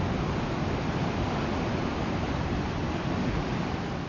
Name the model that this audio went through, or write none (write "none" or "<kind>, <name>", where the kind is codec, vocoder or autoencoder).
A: none